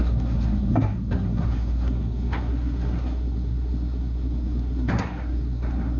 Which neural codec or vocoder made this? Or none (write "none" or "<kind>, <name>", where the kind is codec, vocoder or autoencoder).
codec, SNAC